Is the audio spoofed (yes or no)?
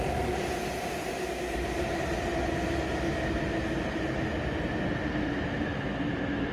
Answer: no